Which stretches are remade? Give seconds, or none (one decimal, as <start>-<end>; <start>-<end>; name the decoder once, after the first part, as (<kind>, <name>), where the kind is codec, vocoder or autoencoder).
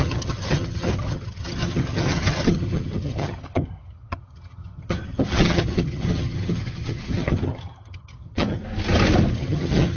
0.0-8.6 (vocoder, HiFi-GAN); 9.3-10.0